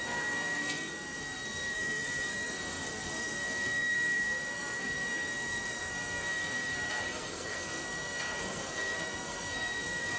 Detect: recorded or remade remade